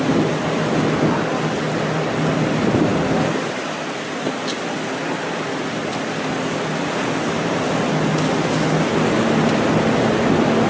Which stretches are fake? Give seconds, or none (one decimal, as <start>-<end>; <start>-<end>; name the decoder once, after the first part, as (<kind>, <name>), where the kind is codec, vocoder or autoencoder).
none